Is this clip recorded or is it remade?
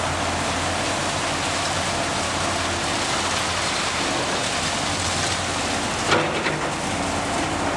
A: recorded